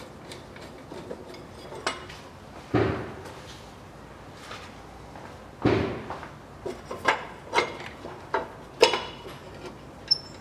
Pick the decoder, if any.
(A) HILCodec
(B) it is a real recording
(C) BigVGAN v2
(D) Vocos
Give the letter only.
B